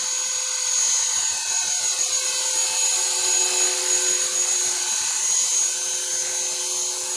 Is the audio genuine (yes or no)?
yes